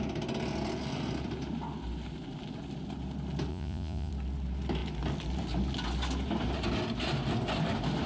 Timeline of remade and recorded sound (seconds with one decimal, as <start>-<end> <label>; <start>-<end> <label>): 0.0-3.5 recorded; 3.5-4.1 remade; 4.1-8.1 recorded